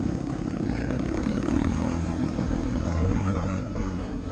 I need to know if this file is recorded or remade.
remade